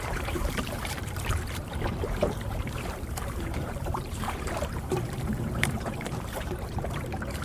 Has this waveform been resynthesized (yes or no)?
yes